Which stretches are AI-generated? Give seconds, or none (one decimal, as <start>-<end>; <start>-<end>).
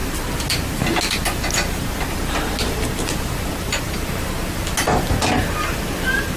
none